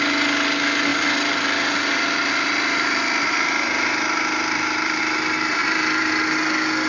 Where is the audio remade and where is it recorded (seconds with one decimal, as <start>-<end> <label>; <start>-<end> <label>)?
0.0-0.9 recorded; 0.9-5.0 remade; 5.0-5.6 recorded; 5.6-6.1 remade; 6.1-6.9 recorded